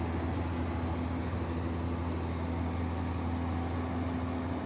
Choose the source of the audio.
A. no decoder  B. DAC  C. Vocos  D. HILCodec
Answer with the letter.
A